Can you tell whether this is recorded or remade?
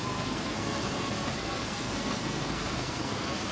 remade